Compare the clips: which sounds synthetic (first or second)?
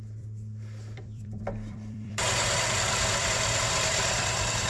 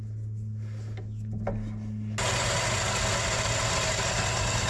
first